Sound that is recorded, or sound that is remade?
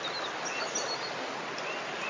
recorded